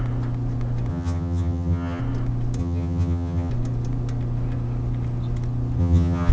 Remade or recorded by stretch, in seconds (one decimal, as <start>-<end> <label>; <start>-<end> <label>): 0.0-0.9 recorded; 0.9-2.0 remade; 2.0-2.6 recorded; 2.6-3.5 remade; 3.5-5.8 recorded; 5.8-6.3 remade